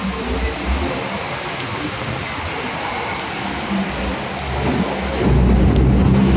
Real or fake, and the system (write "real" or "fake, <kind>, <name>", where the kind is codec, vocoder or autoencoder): real